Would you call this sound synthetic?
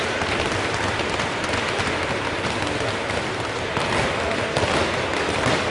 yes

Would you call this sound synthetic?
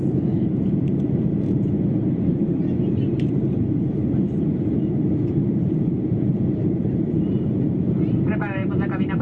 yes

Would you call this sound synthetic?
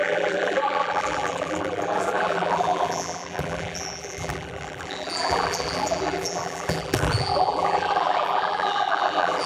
yes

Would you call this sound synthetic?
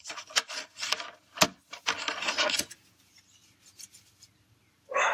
no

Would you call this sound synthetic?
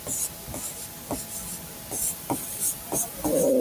no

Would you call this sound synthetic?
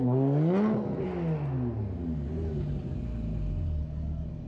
no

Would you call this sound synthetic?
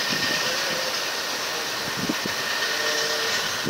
no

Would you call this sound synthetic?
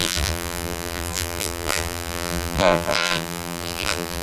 yes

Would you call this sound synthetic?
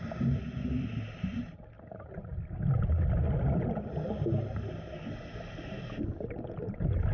no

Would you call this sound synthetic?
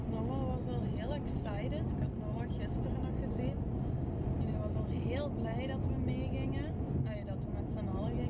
no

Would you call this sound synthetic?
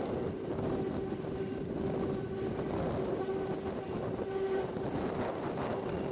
no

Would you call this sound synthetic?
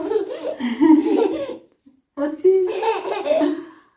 yes